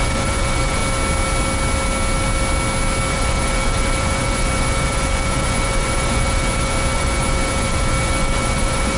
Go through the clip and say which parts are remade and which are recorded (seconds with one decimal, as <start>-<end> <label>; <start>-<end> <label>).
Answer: 0.0-0.8 remade; 0.8-3.1 recorded; 3.1-9.0 remade